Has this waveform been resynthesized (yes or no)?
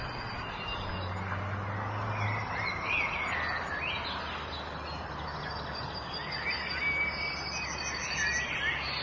no